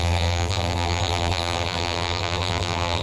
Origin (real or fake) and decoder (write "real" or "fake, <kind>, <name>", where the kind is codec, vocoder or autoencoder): fake, vocoder, BigVGAN v2